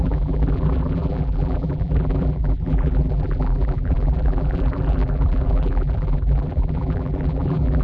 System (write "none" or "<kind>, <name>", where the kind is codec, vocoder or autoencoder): vocoder, BigVGAN v2